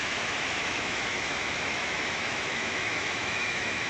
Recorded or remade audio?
remade